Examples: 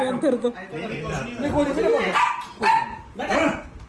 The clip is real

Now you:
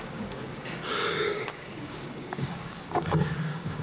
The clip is fake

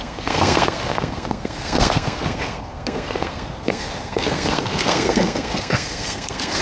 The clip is fake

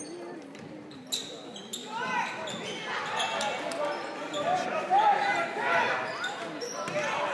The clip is real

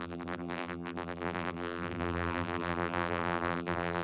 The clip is fake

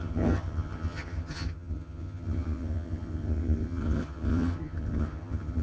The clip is fake